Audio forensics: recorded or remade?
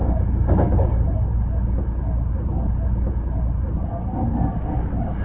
recorded